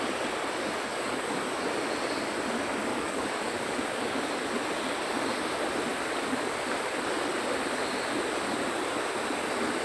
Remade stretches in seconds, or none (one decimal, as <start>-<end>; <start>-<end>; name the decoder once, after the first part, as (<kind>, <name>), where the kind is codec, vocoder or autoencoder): 0.9-1.6 (codec, DAC); 2.9-4.2